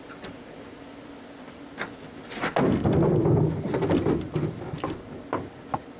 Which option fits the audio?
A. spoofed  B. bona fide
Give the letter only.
B